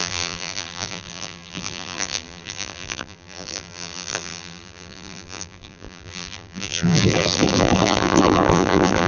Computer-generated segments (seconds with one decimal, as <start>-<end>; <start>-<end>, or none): 0.0-9.1